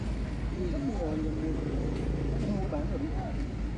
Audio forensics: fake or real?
real